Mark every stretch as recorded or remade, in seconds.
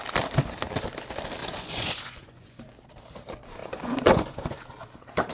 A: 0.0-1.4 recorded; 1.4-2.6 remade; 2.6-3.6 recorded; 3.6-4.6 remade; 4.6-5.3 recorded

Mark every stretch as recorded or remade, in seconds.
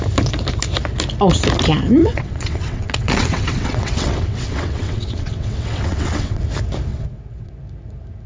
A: 0.0-2.0 recorded; 2.0-6.4 remade; 6.4-6.9 recorded; 6.9-7.5 remade; 7.5-8.3 recorded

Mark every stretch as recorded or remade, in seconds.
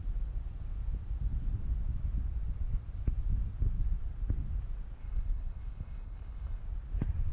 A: 0.0-5.0 recorded; 5.0-6.6 remade; 6.6-7.3 recorded